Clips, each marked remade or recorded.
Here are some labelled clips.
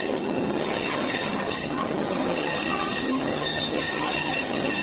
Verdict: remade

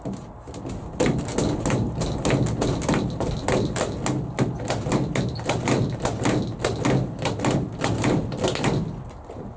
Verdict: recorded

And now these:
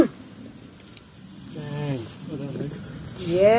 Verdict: recorded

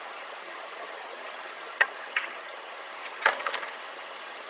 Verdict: remade